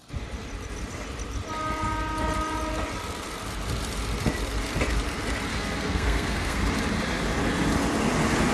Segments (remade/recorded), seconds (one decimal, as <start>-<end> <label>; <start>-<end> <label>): 0.0-5.5 recorded; 5.5-6.6 remade; 6.6-8.5 recorded